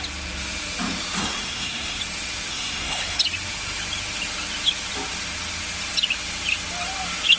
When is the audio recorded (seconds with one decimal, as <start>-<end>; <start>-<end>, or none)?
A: 0.0-1.2; 2.0-2.5; 3.2-7.4